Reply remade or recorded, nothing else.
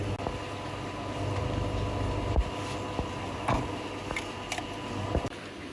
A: recorded